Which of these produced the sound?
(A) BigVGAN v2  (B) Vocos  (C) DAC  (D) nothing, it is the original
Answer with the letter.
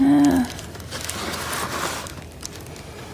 D